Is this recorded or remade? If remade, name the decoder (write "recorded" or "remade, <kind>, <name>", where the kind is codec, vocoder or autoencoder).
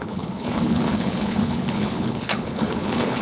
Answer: remade, codec, HILCodec